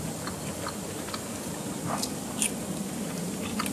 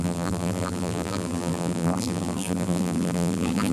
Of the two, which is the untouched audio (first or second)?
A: first